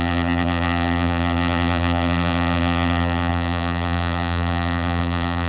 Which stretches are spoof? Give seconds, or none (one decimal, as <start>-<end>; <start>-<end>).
0.0-5.5